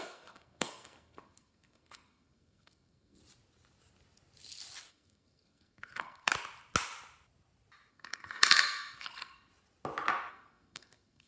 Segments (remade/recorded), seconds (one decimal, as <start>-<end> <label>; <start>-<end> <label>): 0.0-3.2 remade; 3.2-4.9 recorded; 4.9-6.3 remade; 6.3-7.9 recorded; 7.9-9.5 remade; 9.5-10.3 recorded; 10.3-11.3 remade